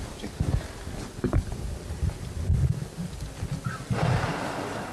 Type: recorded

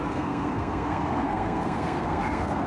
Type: remade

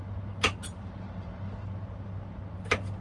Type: recorded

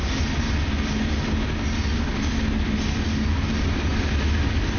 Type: recorded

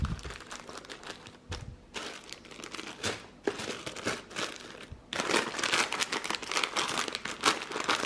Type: recorded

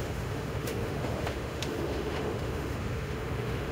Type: remade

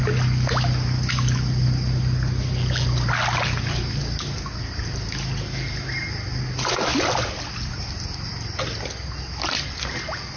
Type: recorded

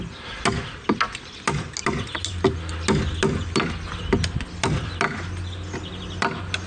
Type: recorded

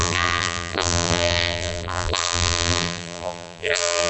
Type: remade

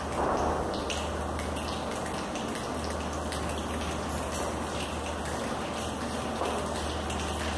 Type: recorded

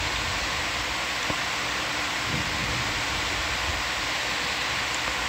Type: recorded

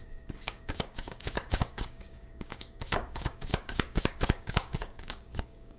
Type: remade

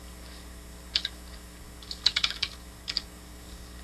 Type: remade